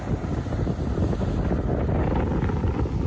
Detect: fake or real real